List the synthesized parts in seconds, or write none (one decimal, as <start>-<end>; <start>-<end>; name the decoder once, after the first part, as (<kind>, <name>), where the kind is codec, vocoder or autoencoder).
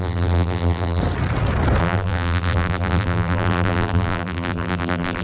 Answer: 0.0-1.0 (vocoder, BigVGAN v2); 1.8-5.2